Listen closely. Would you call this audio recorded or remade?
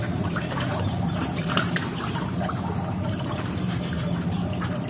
remade